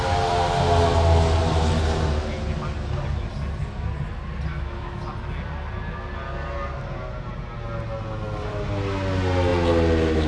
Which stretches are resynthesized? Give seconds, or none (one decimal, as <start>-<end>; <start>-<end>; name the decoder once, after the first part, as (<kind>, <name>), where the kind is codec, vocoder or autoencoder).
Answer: 4.5-5.0 (autoencoder, DAC-VAE)